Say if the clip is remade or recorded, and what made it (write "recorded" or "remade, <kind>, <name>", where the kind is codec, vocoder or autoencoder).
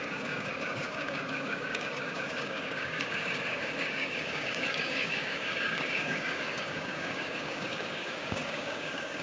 remade, codec, DAC